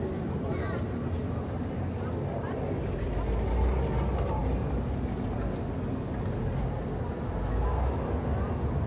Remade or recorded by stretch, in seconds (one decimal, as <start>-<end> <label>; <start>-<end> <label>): 0.0-8.9 recorded